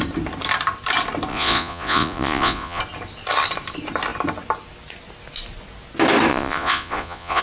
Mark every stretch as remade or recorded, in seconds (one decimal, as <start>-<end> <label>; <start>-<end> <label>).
0.0-1.3 recorded; 1.3-2.8 remade; 2.8-6.3 recorded; 6.3-7.4 remade

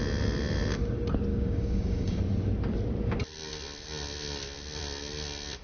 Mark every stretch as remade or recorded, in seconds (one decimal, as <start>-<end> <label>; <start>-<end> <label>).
0.0-1.3 recorded; 1.3-2.2 remade; 2.2-5.6 recorded